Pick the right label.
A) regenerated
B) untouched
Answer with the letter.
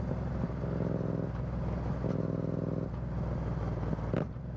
B